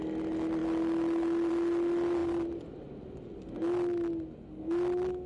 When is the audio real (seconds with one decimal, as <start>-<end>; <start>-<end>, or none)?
0.0-5.3